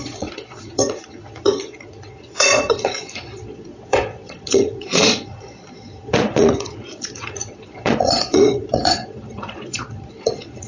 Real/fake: fake